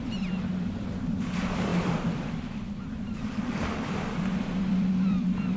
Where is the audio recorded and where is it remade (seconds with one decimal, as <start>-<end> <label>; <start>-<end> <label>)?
0.0-5.6 remade